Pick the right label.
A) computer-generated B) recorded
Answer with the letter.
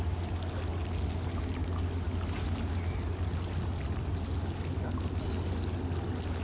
B